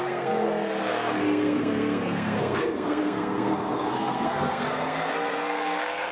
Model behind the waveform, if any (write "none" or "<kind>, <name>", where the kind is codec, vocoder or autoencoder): codec, SNAC